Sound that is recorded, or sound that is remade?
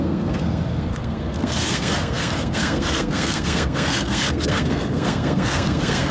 remade